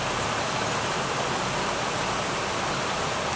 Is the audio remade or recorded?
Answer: recorded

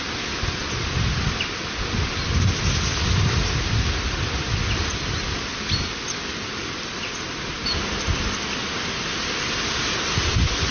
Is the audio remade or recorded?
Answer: recorded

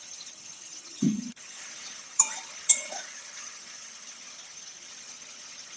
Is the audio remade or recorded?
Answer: remade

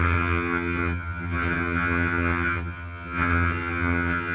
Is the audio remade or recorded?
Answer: remade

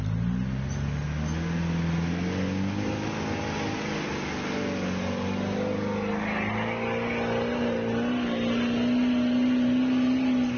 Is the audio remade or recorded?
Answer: recorded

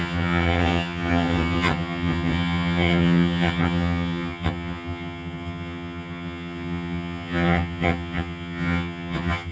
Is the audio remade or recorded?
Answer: remade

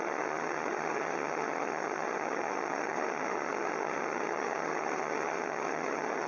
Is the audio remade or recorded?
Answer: remade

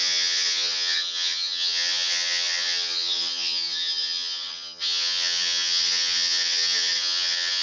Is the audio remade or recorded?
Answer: remade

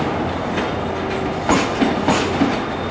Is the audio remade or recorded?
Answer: recorded